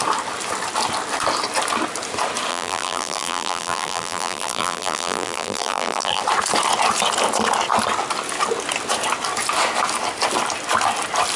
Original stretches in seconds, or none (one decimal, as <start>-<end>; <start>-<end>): 0.0-2.5; 6.2-11.4